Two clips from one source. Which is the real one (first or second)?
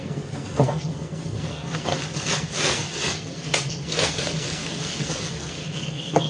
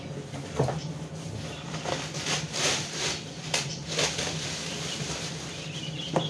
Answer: second